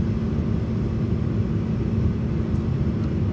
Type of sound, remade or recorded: recorded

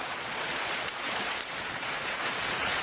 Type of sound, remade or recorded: remade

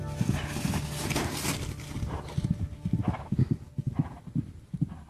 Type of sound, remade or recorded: recorded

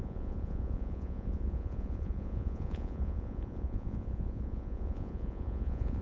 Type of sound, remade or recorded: remade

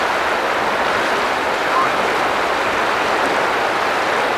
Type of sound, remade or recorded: recorded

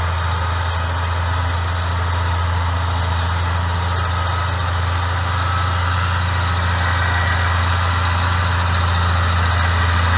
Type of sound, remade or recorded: recorded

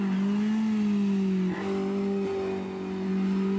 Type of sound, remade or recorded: recorded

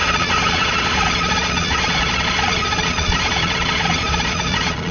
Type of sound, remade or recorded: remade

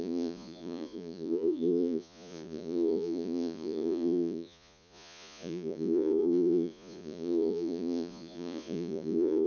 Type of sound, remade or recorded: remade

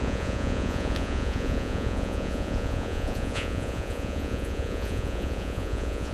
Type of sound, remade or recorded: remade